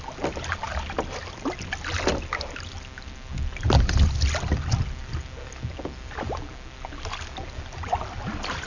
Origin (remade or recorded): recorded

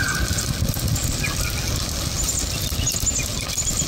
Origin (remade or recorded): recorded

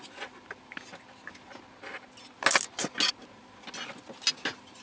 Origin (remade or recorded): recorded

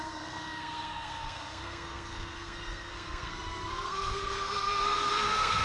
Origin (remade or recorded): remade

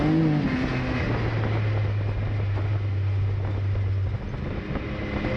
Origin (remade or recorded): recorded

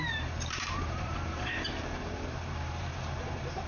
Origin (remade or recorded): remade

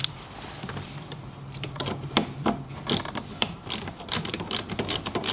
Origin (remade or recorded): remade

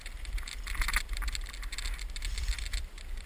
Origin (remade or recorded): recorded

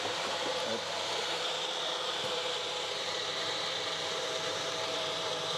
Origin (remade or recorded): remade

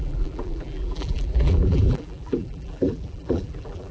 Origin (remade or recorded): remade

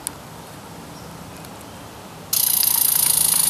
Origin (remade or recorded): recorded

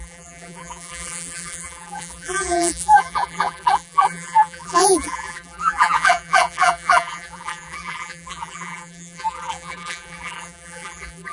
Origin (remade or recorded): remade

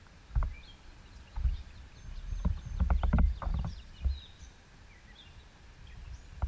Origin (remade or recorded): recorded